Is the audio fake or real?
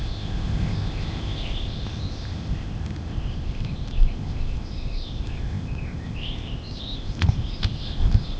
fake